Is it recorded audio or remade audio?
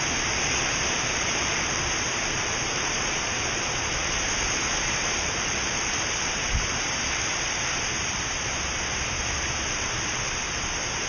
remade